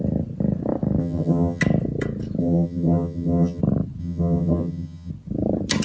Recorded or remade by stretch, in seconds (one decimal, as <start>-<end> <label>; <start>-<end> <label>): 0.0-1.0 recorded; 1.0-1.6 remade; 1.6-2.4 recorded; 2.4-3.6 remade; 3.6-4.0 recorded; 4.0-5.1 remade; 5.1-5.8 recorded